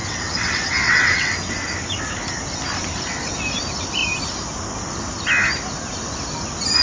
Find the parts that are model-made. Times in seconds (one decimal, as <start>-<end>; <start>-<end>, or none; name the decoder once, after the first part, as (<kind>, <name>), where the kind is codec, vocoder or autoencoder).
0.0-1.3 (vocoder, WaveNeXt)